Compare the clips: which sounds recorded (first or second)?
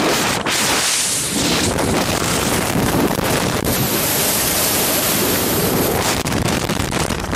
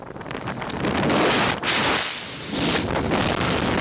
second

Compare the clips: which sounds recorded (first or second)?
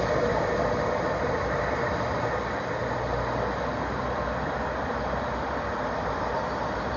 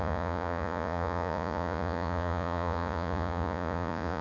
first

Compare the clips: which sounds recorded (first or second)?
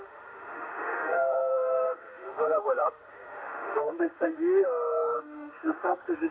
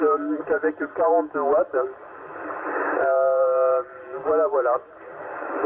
second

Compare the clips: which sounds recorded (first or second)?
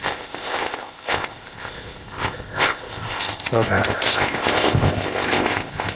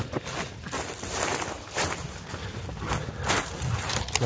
second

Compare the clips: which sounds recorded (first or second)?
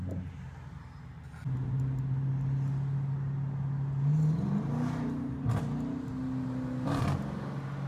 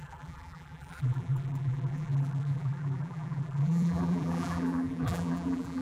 first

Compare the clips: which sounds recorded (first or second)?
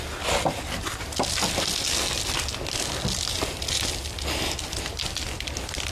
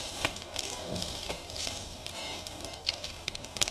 first